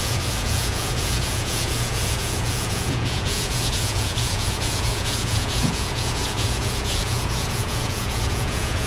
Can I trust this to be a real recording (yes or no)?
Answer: no